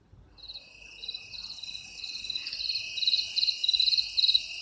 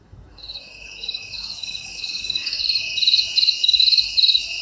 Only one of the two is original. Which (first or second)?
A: first